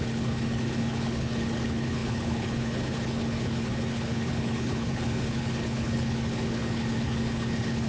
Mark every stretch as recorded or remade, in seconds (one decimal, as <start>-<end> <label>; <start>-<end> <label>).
0.0-7.9 remade